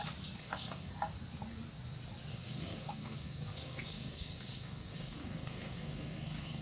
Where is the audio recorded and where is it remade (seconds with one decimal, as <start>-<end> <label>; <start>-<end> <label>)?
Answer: 0.0-0.4 recorded; 0.4-0.9 remade; 0.9-2.3 recorded; 2.3-6.6 remade